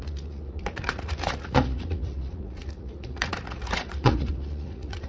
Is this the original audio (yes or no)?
no